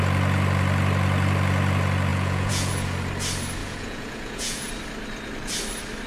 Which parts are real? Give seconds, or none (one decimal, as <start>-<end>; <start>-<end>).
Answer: 0.0-2.1; 2.7-3.6; 4.7-6.1